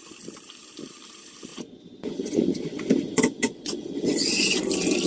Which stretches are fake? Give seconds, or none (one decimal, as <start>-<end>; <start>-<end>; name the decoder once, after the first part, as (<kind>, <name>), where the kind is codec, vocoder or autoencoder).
1.5-4.6 (vocoder, Vocos)